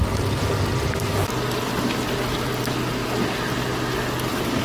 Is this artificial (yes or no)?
no